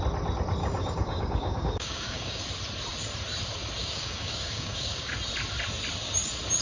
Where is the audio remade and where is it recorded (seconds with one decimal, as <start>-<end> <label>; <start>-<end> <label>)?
0.0-0.6 recorded; 0.6-2.4 remade; 2.4-3.8 recorded; 3.8-5.1 remade; 5.1-6.6 recorded